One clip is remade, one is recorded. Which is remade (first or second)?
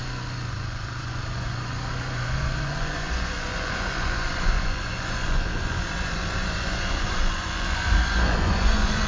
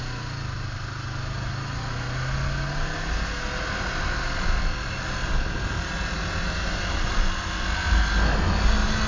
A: first